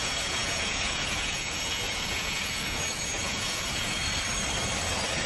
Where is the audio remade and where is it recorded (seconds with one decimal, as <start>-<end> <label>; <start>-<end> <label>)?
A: 0.0-4.0 remade; 4.0-5.3 recorded